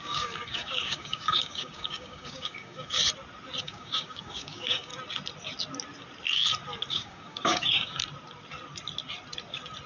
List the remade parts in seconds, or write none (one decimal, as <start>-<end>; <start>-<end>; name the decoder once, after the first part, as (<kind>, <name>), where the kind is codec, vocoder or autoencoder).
0.0-3.0 (codec, DAC); 3.6-4.9; 6.9-8.0